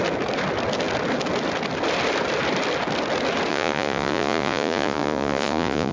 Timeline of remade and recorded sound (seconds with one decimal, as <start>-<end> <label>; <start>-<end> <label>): 0.0-3.5 recorded; 3.5-5.9 remade

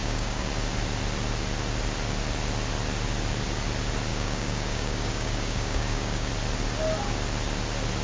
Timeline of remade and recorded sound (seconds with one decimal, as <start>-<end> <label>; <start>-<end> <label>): 0.0-0.5 remade; 0.5-4.1 recorded; 4.1-6.3 remade; 6.3-8.0 recorded

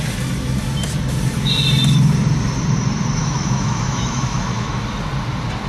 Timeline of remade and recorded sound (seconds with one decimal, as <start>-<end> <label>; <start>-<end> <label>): 0.0-3.2 recorded; 3.2-4.8 remade; 4.8-5.7 recorded

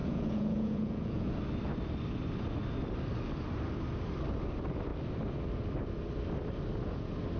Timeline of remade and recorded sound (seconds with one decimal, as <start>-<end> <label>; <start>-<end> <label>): 0.0-1.3 remade; 1.3-7.4 recorded

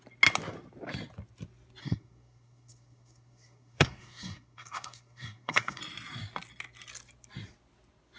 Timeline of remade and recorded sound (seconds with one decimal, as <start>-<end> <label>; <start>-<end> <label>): 0.0-1.8 recorded; 1.8-5.8 remade; 5.8-8.2 recorded